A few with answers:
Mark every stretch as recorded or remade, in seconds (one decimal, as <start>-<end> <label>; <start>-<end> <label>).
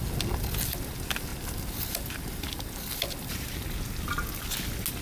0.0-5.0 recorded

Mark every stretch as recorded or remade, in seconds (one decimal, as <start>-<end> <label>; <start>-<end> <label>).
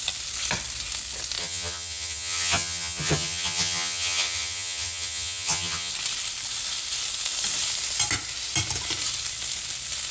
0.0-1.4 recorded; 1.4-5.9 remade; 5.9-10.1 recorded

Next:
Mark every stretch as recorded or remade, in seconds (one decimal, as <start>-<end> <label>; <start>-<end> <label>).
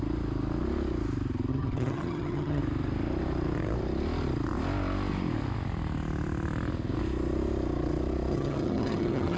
0.0-1.5 recorded; 1.5-2.6 remade; 2.6-8.3 recorded; 8.3-9.4 remade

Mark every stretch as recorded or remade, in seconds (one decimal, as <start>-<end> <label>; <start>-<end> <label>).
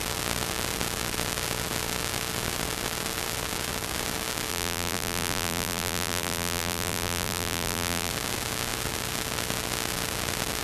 0.0-4.5 recorded; 4.5-8.1 remade; 8.1-10.6 recorded